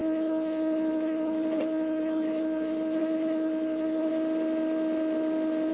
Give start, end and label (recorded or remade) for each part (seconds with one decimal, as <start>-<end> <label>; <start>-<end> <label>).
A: 0.0-4.1 remade; 4.1-5.7 recorded

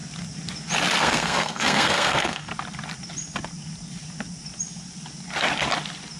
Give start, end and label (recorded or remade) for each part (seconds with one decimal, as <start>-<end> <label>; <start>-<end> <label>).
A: 0.0-1.0 recorded; 1.0-2.5 remade; 2.5-6.2 recorded

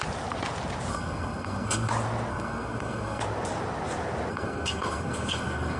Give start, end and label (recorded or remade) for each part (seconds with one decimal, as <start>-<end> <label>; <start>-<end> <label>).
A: 0.0-0.9 recorded; 0.9-1.9 remade; 1.9-2.3 recorded; 2.3-3.2 remade; 3.2-4.3 recorded; 4.3-5.8 remade